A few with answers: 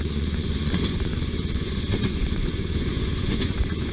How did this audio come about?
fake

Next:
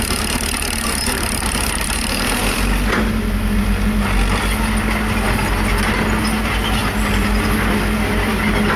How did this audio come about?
real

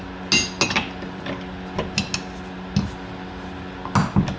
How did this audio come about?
real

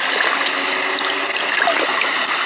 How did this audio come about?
real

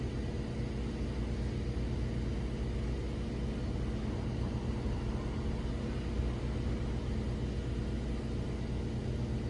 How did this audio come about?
real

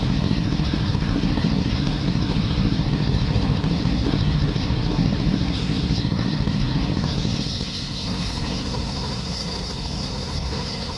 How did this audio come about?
fake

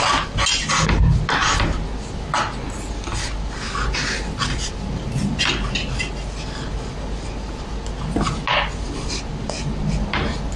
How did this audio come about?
real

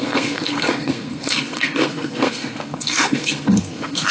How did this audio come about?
fake